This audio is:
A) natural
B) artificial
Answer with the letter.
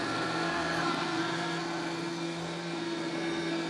B